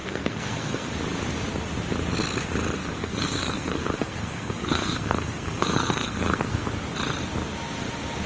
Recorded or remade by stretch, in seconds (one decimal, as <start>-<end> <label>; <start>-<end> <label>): 0.0-0.9 remade; 0.9-2.8 recorded; 2.8-6.7 remade; 6.7-8.3 recorded